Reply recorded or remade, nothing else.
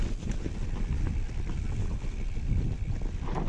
recorded